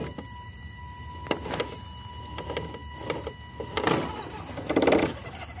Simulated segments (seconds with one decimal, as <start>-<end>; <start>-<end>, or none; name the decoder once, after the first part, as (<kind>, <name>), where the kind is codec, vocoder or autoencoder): 0.0-1.1 (vocoder, BigVGAN v2); 2.8-4.5